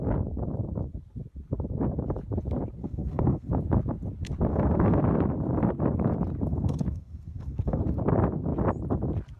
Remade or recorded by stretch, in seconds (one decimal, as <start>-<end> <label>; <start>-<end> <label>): 0.0-2.8 recorded; 2.8-3.5 remade; 3.5-4.5 recorded; 4.5-5.0 remade; 5.0-6.5 recorded; 6.5-7.8 remade; 7.8-9.4 recorded